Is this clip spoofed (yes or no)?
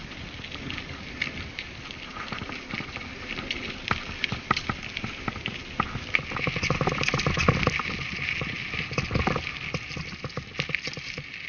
no